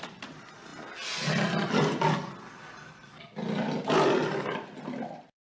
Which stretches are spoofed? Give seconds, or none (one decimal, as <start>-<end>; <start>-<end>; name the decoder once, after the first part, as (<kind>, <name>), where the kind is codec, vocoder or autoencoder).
none